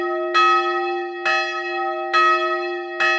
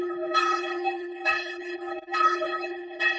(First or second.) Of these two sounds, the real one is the first